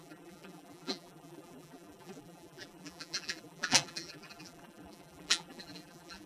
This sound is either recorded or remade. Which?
remade